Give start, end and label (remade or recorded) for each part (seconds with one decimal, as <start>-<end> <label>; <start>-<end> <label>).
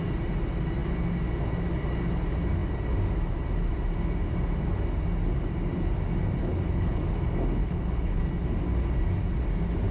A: 0.0-6.4 recorded; 6.4-7.0 remade; 7.0-7.6 recorded; 7.6-8.2 remade; 8.2-9.9 recorded